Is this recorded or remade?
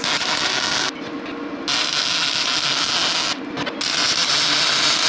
recorded